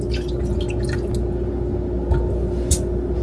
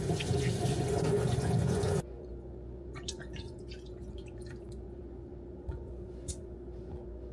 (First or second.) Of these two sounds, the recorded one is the first